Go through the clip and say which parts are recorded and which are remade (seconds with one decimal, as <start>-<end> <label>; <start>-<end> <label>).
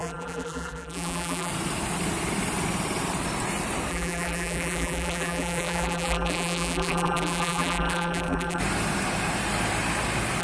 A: 0.0-1.5 remade; 1.5-3.9 recorded; 3.9-8.6 remade; 8.6-10.4 recorded